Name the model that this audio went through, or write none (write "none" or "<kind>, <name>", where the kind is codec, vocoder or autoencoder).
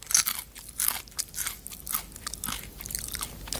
none